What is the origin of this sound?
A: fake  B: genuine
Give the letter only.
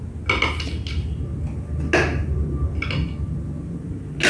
B